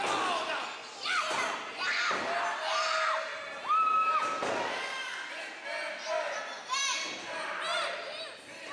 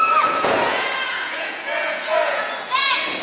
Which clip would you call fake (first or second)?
second